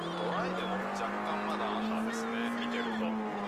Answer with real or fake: real